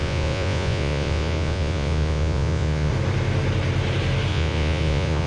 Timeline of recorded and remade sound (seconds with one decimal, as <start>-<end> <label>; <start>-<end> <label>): 0.0-2.9 remade; 2.9-4.3 recorded; 4.3-5.3 remade